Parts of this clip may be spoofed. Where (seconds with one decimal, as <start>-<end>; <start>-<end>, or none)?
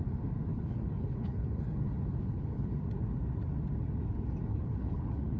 0.5-1.6; 2.2-2.8; 4.5-5.4